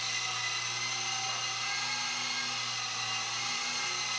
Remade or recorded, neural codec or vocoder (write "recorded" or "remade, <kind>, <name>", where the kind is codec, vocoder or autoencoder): recorded